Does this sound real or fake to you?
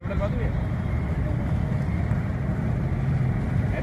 real